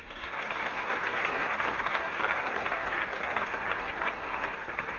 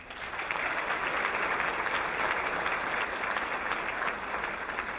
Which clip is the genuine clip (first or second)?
second